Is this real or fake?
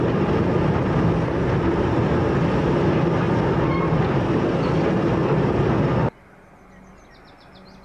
real